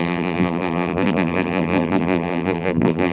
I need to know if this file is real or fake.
fake